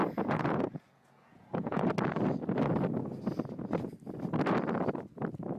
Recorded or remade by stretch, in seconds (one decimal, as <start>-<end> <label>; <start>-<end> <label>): 0.0-1.9 remade; 1.9-5.6 recorded